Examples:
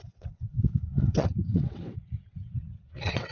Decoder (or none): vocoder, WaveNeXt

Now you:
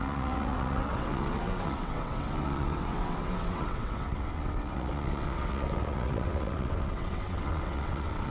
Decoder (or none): vocoder, WaveNeXt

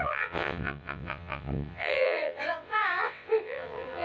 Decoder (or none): vocoder, WaveNeXt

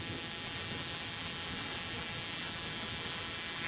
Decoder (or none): none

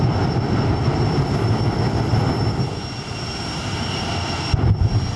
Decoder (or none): none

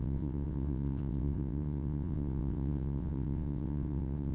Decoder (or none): vocoder, WaveNeXt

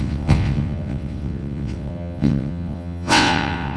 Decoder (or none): vocoder, WaveNeXt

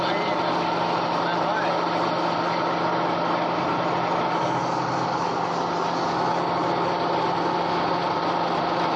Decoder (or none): none